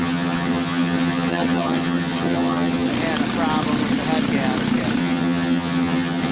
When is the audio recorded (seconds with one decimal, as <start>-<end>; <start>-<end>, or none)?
2.9-5.0